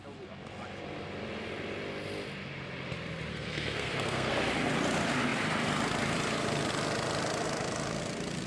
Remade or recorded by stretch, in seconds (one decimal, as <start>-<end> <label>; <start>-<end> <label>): 0.0-3.3 recorded; 3.3-4.3 remade; 4.3-8.5 recorded